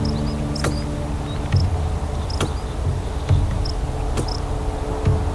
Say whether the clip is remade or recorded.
recorded